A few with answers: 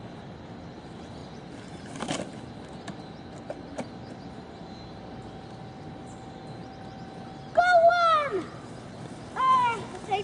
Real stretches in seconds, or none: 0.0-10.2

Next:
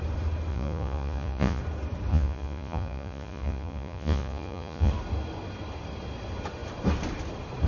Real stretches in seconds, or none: 0.0-0.5; 1.6-2.1; 4.9-7.7

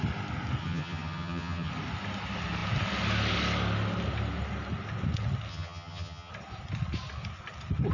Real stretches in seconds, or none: 0.0-0.6; 1.7-5.5; 6.3-7.9

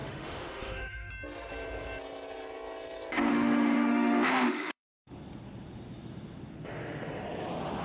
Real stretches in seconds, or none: 1.1-3.3; 5.1-7.8